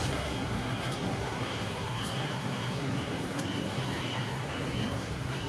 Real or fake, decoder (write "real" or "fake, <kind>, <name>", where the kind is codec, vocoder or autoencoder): fake, codec, SNAC